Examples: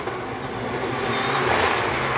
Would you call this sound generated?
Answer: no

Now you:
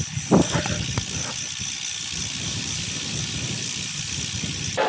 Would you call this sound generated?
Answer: no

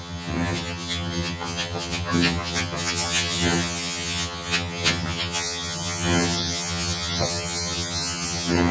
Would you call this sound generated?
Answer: yes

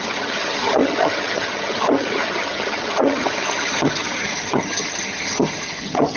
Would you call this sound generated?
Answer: yes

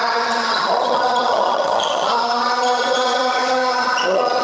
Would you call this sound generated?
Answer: yes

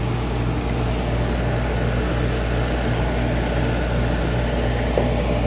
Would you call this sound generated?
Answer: no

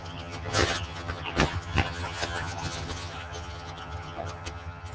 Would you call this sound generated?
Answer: yes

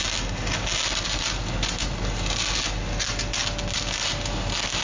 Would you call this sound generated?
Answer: no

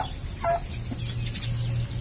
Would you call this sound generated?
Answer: no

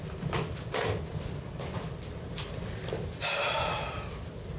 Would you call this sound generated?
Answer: no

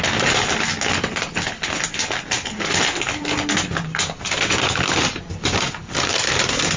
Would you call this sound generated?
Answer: no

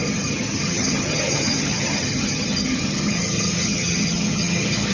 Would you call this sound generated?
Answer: yes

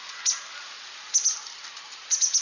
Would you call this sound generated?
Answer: no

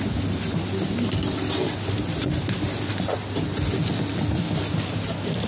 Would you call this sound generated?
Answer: no